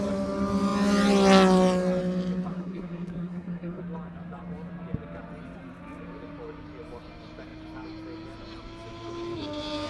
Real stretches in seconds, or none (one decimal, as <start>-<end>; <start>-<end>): 0.0-2.5; 3.8-9.9

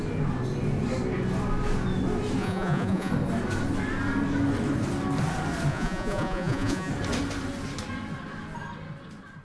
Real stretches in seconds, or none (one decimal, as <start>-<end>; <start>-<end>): 0.0-2.4; 3.1-5.7; 6.9-9.4

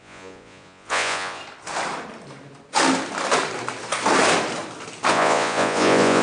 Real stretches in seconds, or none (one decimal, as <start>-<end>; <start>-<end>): 1.4-5.1

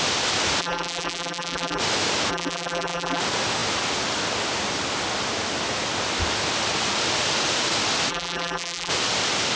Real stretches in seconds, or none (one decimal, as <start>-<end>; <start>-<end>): 0.0-0.6; 1.8-2.3; 3.2-8.1; 8.9-9.6

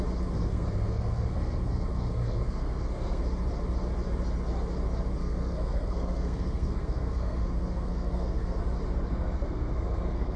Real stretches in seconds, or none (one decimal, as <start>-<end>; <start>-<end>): 0.0-0.4; 3.2-5.2; 8.6-9.1

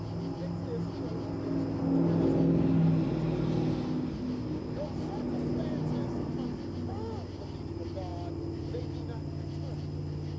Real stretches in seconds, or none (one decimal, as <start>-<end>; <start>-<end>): 0.0-10.4